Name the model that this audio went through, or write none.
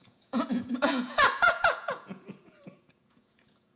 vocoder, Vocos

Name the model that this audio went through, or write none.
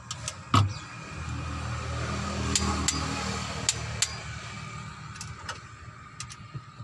none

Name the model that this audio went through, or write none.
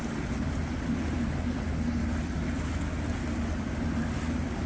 none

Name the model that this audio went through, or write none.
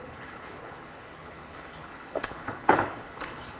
codec, HILCodec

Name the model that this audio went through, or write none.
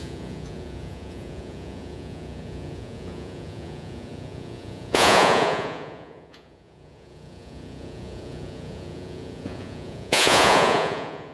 vocoder, Vocos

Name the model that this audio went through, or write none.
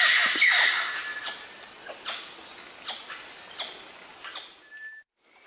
none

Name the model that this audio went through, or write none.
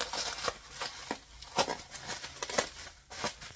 none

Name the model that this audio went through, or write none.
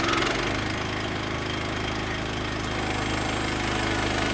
none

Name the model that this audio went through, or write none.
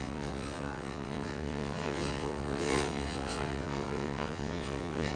vocoder, WaveNeXt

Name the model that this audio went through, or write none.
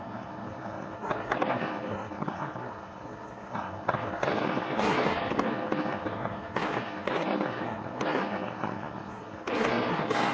codec, SNAC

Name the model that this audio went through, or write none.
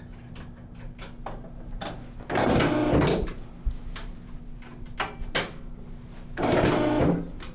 none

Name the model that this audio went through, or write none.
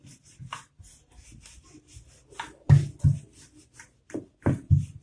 none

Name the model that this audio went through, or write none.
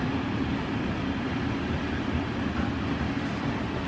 none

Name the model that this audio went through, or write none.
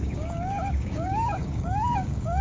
codec, DAC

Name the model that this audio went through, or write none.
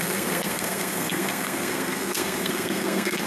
codec, SNAC